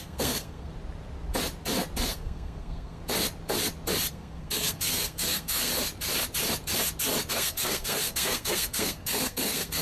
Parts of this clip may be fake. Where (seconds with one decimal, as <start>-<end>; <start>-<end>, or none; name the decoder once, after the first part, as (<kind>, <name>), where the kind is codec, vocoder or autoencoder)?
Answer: 0.0-0.7 (codec, SNAC); 2.1-3.0; 4.1-5.7; 7.3-9.8